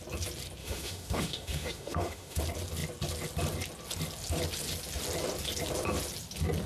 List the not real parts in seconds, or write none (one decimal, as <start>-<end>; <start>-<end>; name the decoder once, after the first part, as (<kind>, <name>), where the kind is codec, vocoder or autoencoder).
0.6-2.4 (autoencoder, DAC-VAE)